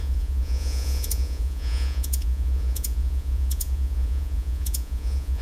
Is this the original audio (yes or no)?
no